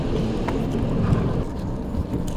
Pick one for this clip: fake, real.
real